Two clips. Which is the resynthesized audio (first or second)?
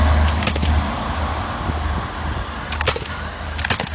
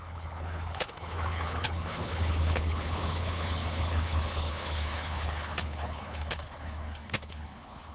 second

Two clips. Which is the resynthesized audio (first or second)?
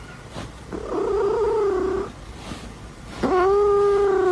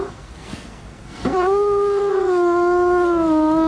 second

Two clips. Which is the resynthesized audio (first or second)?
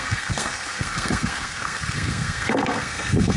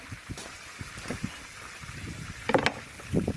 first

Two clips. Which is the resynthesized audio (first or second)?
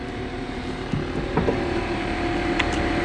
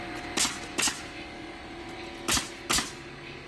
first